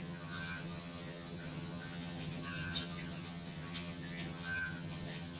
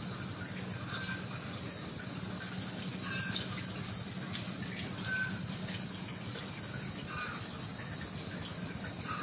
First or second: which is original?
second